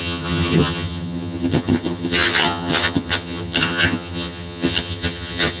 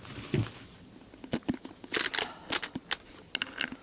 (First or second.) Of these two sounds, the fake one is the first